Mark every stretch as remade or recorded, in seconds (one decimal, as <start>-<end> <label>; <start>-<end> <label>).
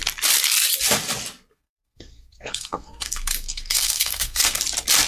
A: 0.0-1.5 recorded; 1.5-4.6 remade; 4.6-5.1 recorded